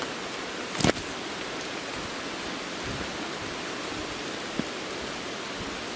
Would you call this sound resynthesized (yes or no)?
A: no